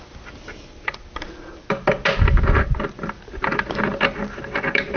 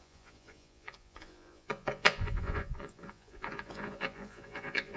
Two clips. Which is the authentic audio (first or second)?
first